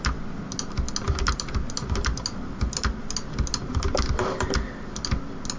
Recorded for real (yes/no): yes